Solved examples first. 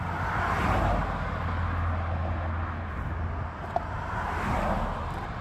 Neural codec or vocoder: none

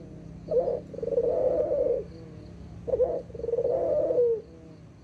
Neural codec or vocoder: none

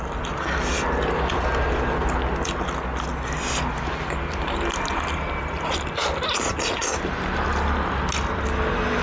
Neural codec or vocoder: none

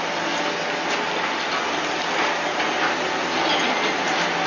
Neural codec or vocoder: none